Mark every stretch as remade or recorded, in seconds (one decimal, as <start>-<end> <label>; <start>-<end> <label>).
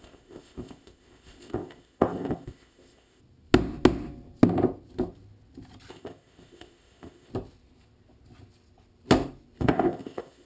0.0-3.2 remade; 3.2-5.9 recorded; 5.9-7.3 remade; 7.3-9.6 recorded; 9.6-10.5 remade